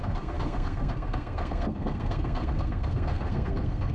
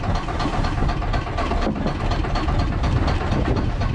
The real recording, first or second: second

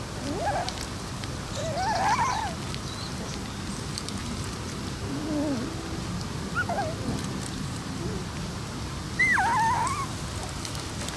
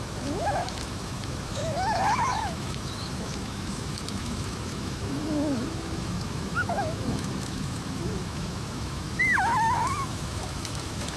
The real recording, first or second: first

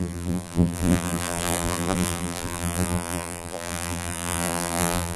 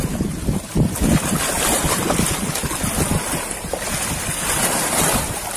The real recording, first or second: second